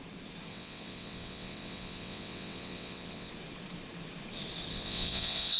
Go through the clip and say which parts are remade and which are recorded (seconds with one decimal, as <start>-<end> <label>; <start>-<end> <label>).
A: 0.0-0.5 recorded; 0.5-3.3 remade; 3.3-4.7 recorded; 4.7-5.6 remade